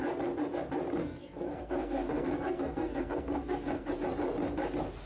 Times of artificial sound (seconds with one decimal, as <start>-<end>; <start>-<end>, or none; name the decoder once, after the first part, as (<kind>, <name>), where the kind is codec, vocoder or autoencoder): 1.0-3.9 (codec, SNAC)